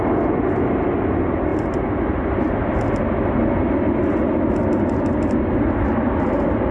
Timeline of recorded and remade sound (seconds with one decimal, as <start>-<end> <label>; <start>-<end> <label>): 0.0-6.7 recorded